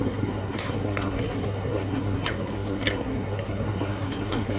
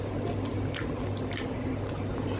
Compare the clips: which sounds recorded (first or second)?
second